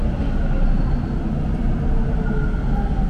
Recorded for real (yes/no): yes